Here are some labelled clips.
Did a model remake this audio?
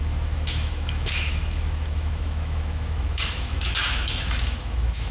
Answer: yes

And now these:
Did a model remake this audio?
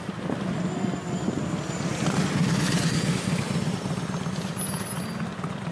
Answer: no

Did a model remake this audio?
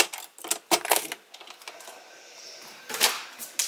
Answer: no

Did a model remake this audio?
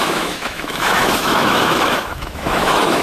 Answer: yes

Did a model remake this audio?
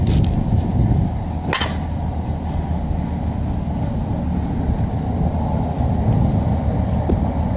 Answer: no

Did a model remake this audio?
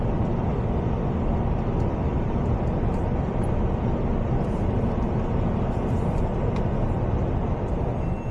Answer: no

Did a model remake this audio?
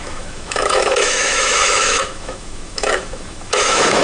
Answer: yes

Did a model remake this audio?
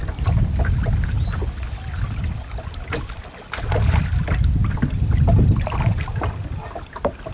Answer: no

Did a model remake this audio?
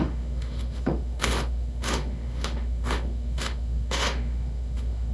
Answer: yes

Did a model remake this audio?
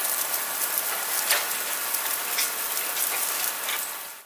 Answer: no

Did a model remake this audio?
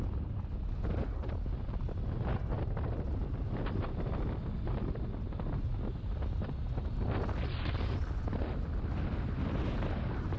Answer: no